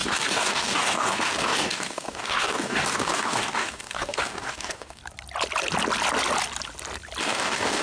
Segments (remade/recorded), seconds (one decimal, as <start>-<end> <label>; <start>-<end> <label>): 0.0-5.0 remade; 5.0-7.2 recorded; 7.2-7.8 remade